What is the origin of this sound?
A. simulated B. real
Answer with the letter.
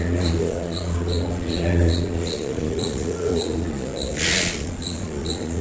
A